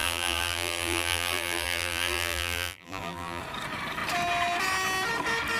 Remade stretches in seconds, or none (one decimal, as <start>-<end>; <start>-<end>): 0.0-3.4